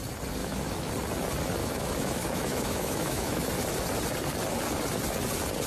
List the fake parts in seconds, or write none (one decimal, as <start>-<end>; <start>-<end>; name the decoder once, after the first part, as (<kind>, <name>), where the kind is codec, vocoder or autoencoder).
0.4-0.9 (autoencoder, DAC-VAE); 1.6-3.5